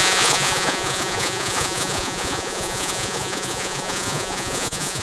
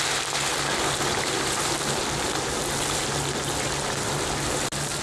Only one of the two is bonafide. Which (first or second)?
second